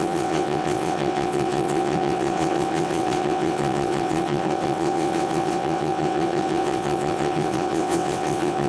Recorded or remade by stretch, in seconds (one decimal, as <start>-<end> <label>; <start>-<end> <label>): 0.0-8.7 remade